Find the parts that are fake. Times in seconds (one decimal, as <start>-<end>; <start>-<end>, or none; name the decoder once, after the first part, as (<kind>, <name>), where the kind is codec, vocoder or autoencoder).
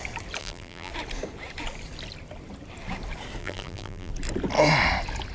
0.4-0.9 (vocoder, BigVGAN v2); 3.4-4.1